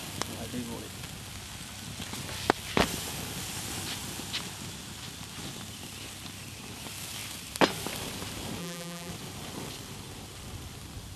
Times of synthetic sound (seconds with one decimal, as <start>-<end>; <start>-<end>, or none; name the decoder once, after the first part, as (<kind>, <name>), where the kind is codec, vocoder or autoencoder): 8.6-9.1 (vocoder, BigVGAN v2)